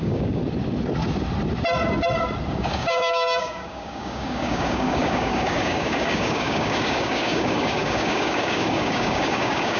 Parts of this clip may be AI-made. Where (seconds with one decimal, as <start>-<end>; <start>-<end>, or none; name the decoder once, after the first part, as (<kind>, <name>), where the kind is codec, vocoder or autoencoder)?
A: 0.0-0.4 (codec, DAC); 2.5-9.8